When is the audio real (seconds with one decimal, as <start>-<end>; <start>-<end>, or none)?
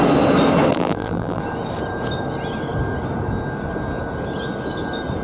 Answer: 0.0-0.7; 1.4-5.2